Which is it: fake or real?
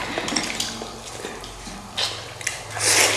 real